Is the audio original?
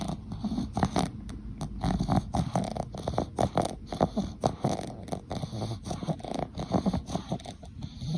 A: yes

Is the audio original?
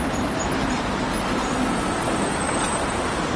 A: no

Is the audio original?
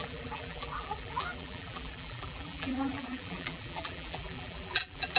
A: no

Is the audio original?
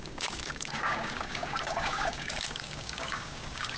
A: no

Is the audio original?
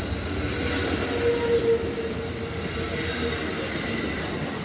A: yes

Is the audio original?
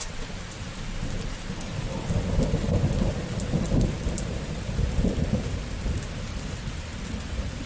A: yes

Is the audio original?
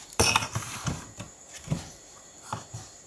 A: no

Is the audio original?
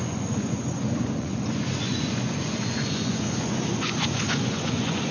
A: no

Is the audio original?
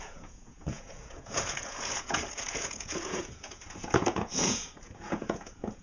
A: no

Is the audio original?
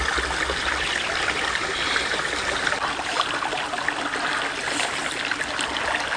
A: yes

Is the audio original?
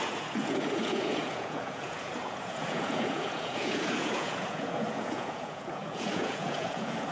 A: no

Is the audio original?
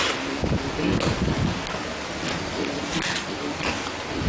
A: yes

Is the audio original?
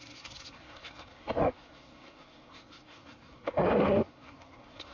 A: no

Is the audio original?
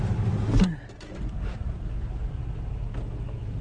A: yes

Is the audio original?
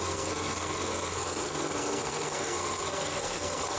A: no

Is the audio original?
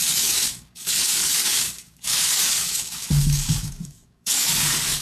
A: no